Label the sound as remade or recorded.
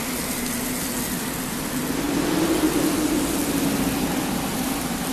recorded